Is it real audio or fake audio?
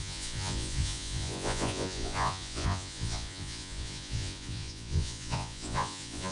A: fake